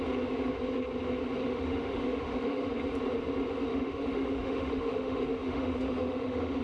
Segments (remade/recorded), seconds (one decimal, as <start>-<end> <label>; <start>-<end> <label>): 0.0-1.4 recorded; 1.4-2.7 remade; 2.7-3.7 recorded; 3.7-6.6 remade

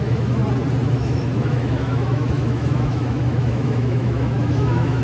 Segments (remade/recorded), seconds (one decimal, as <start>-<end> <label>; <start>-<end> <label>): 0.0-0.4 remade; 0.4-0.9 recorded; 0.9-5.0 remade

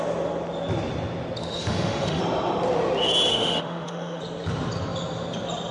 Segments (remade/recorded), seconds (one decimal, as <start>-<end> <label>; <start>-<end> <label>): 0.0-1.4 recorded; 1.4-2.2 remade; 2.2-3.3 recorded; 3.3-4.2 remade; 4.2-5.7 recorded

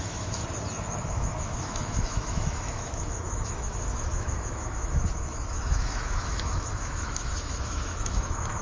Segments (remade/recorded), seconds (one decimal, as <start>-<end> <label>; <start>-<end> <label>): 0.0-0.4 remade; 0.4-1.1 recorded; 1.1-8.6 remade